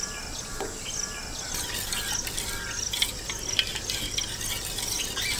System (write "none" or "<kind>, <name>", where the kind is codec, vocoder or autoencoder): none